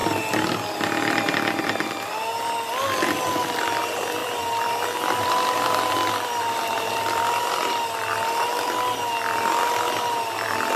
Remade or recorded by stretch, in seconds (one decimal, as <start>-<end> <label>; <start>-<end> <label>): 0.0-4.2 recorded; 4.2-7.7 remade; 7.7-10.8 recorded